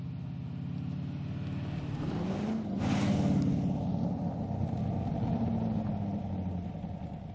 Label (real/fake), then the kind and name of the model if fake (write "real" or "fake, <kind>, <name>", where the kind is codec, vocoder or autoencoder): real